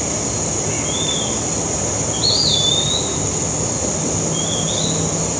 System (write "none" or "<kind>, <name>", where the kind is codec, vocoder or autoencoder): none